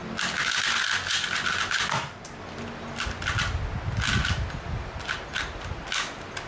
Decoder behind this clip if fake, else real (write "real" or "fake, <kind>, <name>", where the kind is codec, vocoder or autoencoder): real